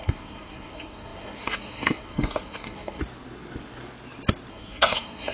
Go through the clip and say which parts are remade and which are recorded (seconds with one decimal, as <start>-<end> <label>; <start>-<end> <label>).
0.0-3.0 remade; 3.0-4.5 recorded; 4.5-5.3 remade